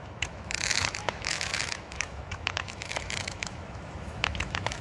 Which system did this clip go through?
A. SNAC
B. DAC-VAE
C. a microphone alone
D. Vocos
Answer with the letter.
B